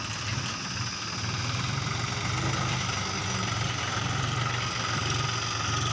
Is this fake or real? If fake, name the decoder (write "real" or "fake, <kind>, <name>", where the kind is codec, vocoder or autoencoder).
real